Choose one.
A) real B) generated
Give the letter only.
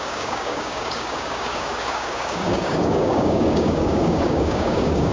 B